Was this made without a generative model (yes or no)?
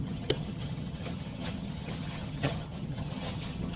no